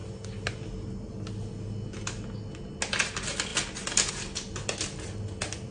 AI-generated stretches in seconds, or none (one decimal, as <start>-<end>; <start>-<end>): none